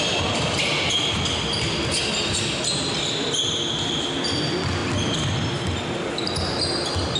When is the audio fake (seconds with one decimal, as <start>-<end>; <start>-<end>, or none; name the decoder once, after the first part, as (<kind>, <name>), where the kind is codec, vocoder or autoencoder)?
none